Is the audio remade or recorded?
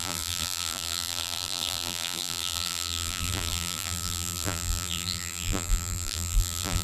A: remade